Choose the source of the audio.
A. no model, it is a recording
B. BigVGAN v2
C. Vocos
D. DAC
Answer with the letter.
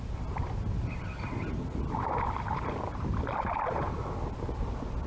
A